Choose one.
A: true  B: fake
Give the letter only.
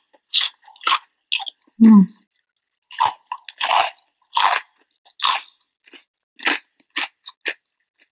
A